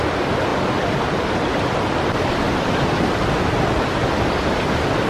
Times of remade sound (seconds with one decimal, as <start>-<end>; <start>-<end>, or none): 0.5-3.4